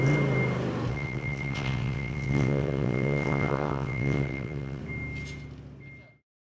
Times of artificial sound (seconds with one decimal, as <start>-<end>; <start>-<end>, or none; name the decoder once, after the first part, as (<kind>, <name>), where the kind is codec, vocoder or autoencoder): 0.9-4.8 (vocoder, WaveNeXt)